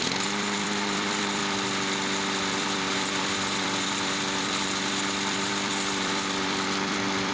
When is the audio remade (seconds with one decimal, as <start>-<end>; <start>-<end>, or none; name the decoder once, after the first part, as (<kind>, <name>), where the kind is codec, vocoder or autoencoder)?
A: 0.0-1.4 (vocoder, BigVGAN v2); 2.4-7.3